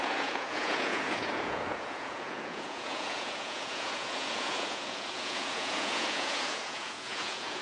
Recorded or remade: remade